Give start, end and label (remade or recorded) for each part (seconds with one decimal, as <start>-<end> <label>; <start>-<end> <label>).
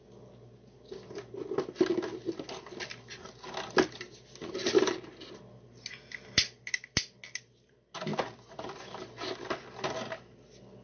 0.0-10.8 recorded